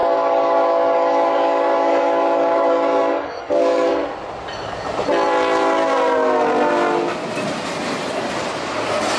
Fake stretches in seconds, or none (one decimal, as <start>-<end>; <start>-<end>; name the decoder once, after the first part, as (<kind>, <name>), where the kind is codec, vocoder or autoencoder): 0.0-3.9 (codec, DAC)